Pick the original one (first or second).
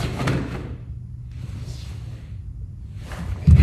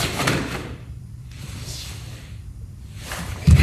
first